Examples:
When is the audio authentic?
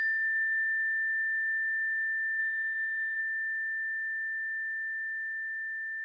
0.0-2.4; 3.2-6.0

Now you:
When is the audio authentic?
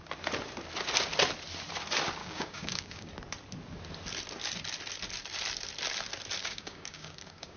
0.0-2.2; 3.1-6.4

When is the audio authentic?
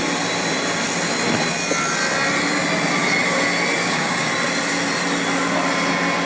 0.0-3.8; 4.3-6.3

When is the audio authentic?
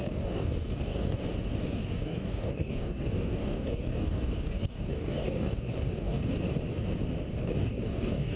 1.2-1.6; 6.3-7.3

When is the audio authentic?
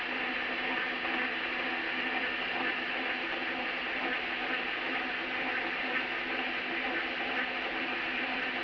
0.0-8.6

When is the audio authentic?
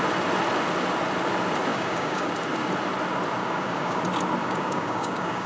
0.0-1.7; 2.3-3.4; 4.0-4.4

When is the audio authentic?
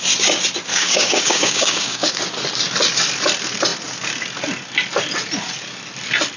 0.0-0.7; 2.2-6.4